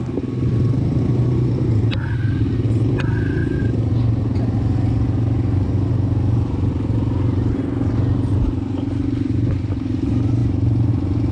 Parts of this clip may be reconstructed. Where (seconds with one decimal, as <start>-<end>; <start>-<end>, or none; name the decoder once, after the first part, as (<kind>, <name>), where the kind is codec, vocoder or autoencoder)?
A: none